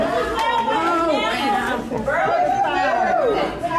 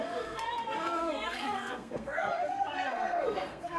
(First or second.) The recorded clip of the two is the first